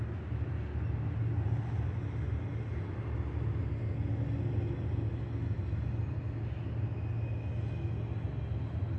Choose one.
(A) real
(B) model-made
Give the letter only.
A